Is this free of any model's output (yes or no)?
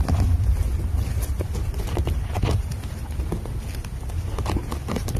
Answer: yes